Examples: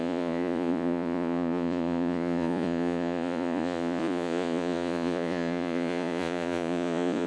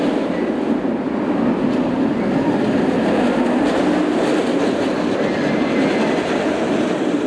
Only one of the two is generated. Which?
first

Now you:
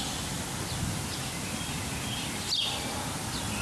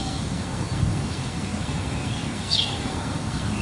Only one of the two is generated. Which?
second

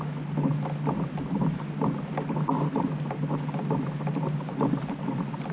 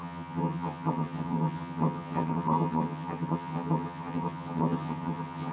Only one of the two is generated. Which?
second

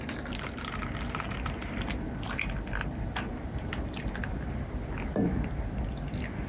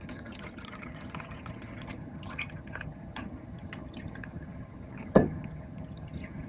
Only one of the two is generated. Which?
second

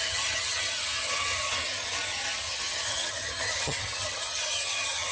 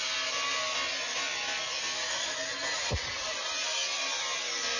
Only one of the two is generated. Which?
first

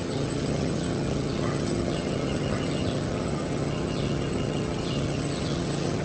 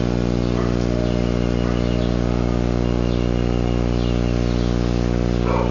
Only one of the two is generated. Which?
first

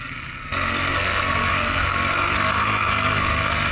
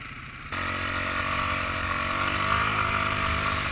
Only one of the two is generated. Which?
first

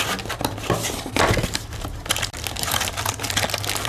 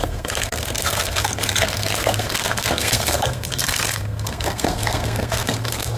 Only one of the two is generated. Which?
second